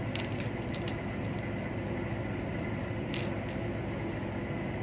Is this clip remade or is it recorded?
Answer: recorded